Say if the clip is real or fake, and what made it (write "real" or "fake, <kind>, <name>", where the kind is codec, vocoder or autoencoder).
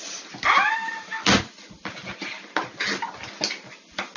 real